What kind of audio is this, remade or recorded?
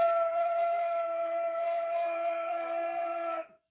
remade